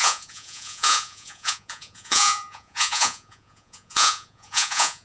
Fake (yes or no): yes